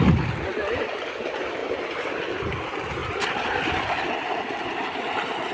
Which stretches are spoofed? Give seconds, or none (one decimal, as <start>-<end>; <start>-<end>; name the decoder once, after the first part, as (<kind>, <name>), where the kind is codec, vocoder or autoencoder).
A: 3.0-4.1 (vocoder, BigVGAN v2)